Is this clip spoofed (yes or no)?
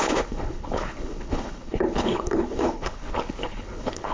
yes